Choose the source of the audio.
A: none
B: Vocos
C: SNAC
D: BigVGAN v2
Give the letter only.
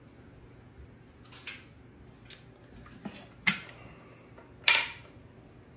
A